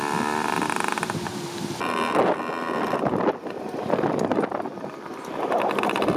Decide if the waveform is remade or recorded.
recorded